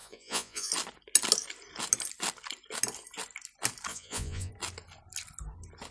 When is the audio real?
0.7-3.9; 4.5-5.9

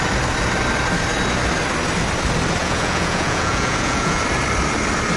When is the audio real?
0.0-2.6; 4.2-5.2

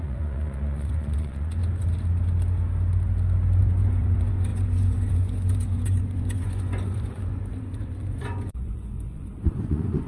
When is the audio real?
1.6-3.6

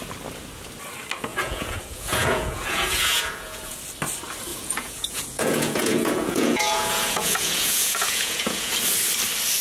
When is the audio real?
0.0-1.3; 3.8-4.5; 8.7-9.6

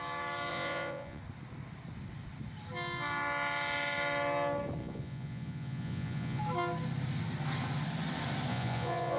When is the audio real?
0.0-0.5; 1.2-4.8; 6.4-8.5

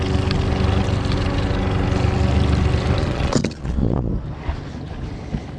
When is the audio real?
0.0-3.0; 4.1-5.6

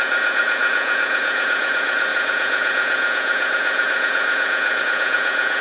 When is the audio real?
none